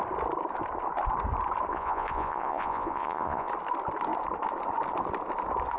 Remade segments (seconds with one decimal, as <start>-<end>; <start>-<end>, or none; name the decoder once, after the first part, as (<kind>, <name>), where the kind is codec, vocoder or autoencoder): 1.7-3.5 (vocoder, Vocos)